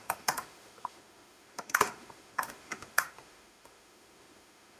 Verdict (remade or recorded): remade